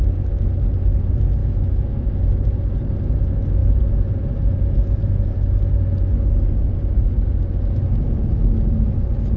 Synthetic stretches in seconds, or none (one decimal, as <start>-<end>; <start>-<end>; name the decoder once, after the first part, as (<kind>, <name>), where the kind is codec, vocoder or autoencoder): 1.4-2.2 (autoencoder, DAC-VAE)